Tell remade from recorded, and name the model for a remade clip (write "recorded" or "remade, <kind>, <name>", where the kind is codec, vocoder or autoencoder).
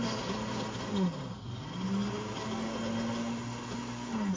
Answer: recorded